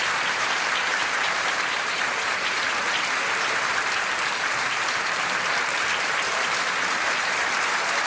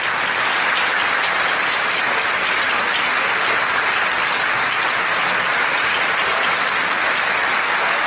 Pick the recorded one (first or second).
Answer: second